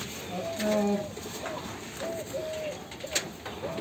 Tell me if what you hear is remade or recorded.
recorded